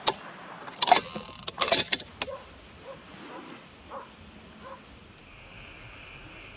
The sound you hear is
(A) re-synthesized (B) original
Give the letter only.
B